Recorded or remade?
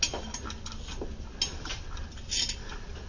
recorded